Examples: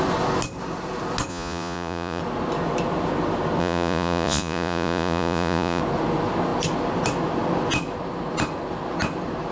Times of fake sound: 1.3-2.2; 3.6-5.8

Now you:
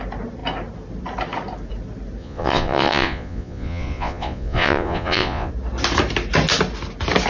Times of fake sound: 2.2-5.5

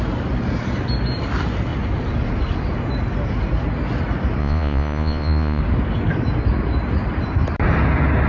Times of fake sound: 4.4-5.6

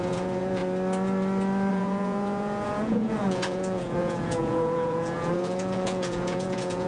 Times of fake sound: 0.0-0.6; 1.7-6.9

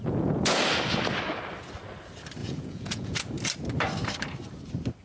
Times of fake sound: 0.0-0.6; 2.4-3.2

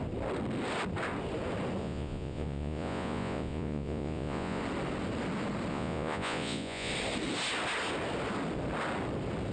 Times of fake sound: 1.8-4.6; 5.7-6.9

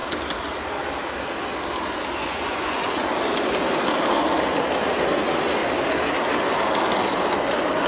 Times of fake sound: 2.2-3.2

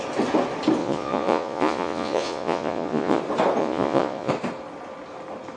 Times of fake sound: 0.8-3.2; 3.6-4.3